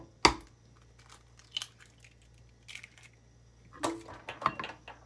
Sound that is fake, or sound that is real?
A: real